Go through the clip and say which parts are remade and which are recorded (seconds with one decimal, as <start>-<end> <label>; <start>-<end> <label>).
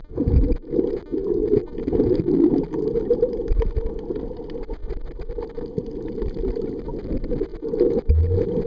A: 0.0-1.2 recorded; 1.2-3.5 remade; 3.5-4.8 recorded; 4.8-5.8 remade; 5.8-8.7 recorded